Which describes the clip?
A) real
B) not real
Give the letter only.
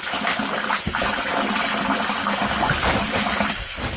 A